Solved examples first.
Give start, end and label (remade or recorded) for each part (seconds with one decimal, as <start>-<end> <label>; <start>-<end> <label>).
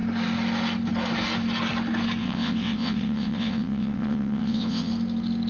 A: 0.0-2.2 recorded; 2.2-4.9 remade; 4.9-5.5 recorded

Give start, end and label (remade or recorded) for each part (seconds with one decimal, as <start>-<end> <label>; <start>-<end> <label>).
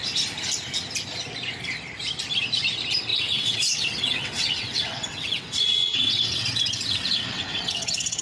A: 0.0-3.1 recorded; 3.1-8.2 remade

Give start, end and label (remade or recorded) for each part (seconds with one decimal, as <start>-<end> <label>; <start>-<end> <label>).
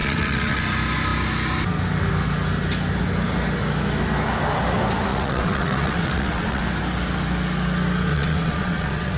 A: 0.0-0.6 remade; 0.6-5.1 recorded; 5.1-6.6 remade; 6.6-8.1 recorded; 8.1-9.2 remade